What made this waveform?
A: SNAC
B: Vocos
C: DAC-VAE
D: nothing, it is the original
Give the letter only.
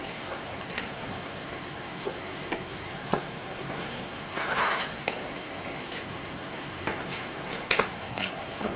A